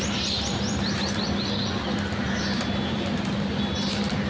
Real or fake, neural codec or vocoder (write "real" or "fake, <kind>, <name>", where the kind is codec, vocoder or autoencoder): real